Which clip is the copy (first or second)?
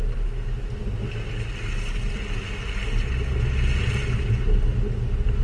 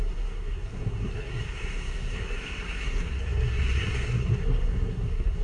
second